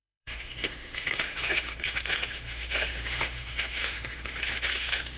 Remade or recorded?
remade